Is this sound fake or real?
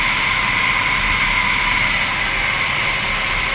real